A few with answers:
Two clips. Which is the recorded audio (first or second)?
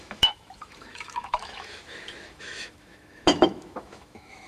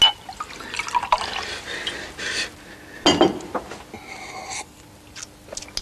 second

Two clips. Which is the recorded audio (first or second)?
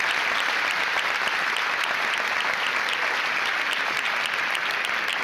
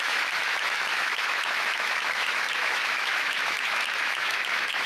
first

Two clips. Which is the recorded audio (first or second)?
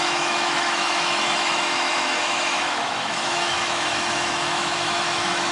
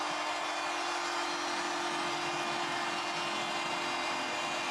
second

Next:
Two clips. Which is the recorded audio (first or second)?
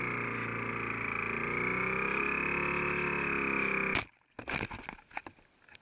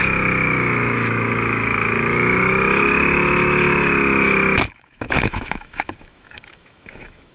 first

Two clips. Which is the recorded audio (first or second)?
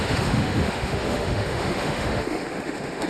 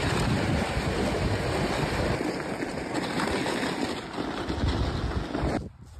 second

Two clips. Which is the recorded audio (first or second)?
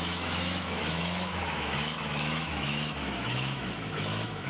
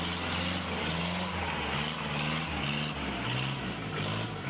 second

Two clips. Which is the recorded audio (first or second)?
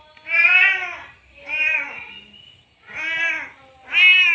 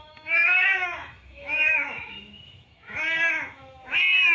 first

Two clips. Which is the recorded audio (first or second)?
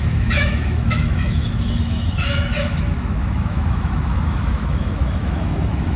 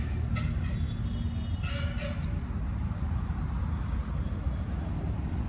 second